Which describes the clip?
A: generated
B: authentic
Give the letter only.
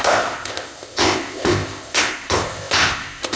A